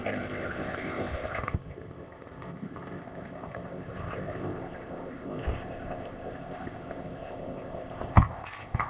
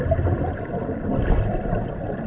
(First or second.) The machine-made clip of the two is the first